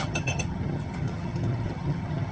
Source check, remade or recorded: remade